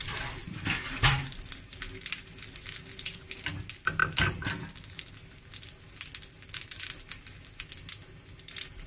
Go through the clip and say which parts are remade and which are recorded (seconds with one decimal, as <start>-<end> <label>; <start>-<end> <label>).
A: 0.0-8.9 recorded